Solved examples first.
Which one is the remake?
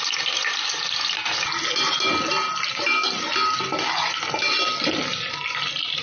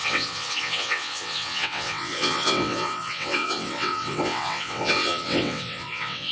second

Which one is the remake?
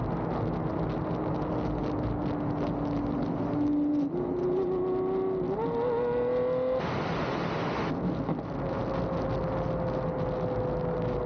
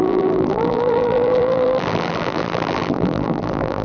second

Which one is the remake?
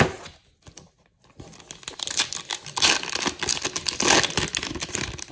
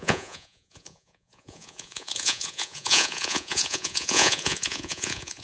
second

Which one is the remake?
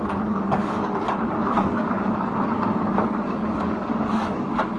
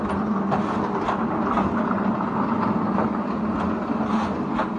first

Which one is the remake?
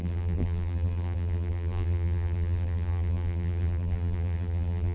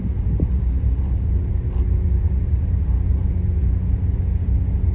first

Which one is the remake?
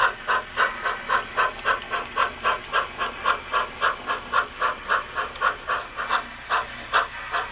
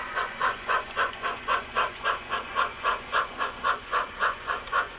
second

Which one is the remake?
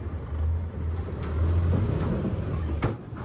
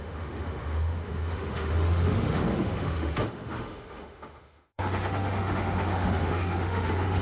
second